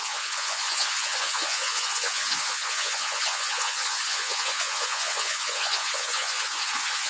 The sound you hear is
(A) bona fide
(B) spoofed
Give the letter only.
B